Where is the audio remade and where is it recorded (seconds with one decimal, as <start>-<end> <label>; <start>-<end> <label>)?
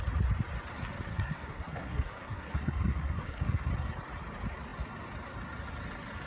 0.0-1.1 recorded; 1.1-3.7 remade; 3.7-6.3 recorded